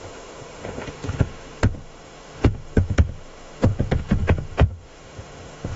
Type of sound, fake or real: fake